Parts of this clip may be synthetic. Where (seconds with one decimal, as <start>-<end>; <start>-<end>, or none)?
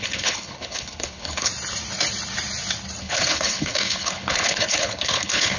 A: 0.0-1.5; 3.0-5.6